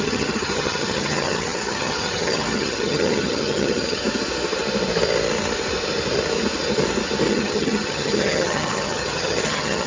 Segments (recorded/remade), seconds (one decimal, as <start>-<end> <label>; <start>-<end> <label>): 0.0-4.0 remade; 4.0-7.3 recorded; 7.3-9.9 remade